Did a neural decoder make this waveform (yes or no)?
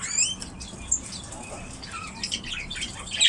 no